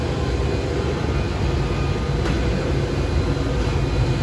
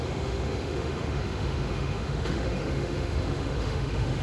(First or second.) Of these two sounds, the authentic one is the first